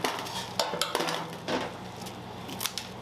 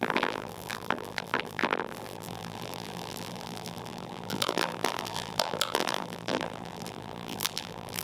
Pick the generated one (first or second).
second